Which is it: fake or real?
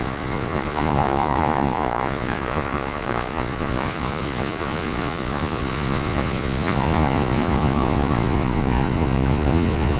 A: fake